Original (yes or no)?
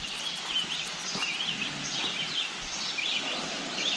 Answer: yes